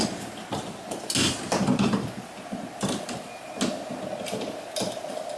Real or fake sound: real